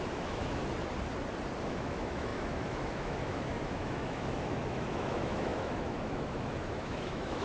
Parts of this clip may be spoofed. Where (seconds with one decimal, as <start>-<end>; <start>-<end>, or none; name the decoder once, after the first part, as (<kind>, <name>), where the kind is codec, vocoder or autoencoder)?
0.0-0.6 (autoencoder, DAC-VAE); 1.6-7.4